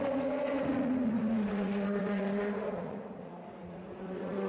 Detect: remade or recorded remade